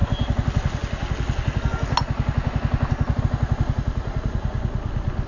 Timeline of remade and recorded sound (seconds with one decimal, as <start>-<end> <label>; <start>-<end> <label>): 0.0-5.3 recorded